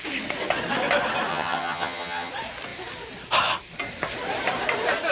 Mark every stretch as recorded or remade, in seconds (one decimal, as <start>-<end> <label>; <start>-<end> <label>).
0.0-1.3 recorded; 1.3-2.3 remade; 2.3-5.1 recorded